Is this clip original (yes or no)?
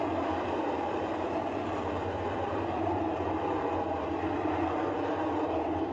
no